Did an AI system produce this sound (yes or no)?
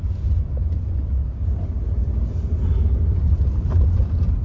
no